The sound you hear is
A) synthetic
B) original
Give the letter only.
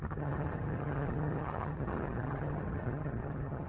A